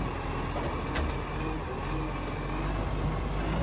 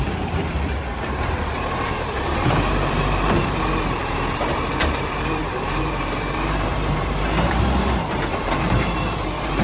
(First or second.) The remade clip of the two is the second